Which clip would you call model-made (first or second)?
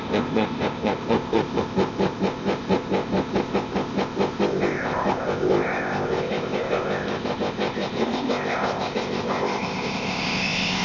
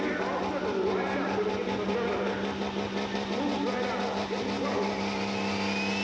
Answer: first